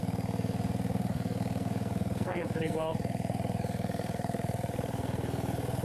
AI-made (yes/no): yes